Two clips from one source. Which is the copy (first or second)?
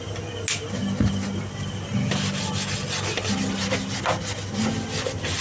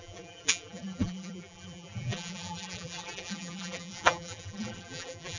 second